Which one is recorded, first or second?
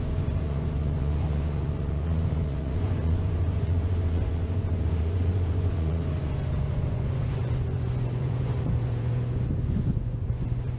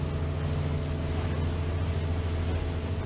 second